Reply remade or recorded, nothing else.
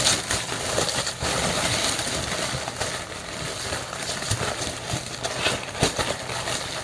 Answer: recorded